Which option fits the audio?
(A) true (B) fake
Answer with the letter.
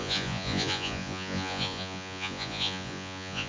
B